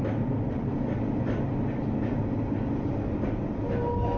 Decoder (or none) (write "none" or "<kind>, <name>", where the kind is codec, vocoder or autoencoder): none